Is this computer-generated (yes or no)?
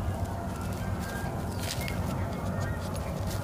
no